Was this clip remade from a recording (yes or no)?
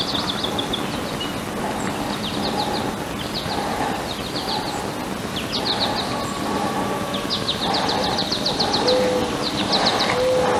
no